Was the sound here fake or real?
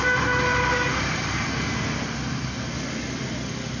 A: real